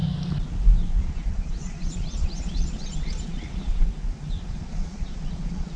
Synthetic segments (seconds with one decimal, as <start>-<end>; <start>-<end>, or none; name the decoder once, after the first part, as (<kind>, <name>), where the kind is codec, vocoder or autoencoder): 1.0-3.7 (vocoder, Vocos); 4.5-5.8